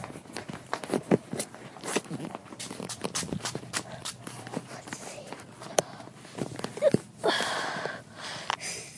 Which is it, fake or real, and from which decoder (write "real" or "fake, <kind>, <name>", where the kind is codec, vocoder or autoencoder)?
fake, vocoder, BigVGAN v2